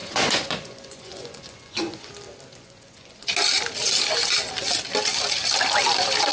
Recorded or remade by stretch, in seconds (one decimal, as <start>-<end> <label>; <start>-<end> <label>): 0.0-2.1 remade; 2.1-2.5 recorded; 2.5-3.3 remade; 3.3-6.3 recorded